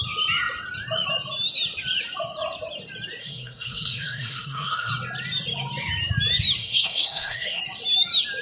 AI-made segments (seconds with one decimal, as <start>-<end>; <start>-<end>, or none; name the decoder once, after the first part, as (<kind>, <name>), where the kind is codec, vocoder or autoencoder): 3.2-4.9 (codec, SNAC); 6.6-7.6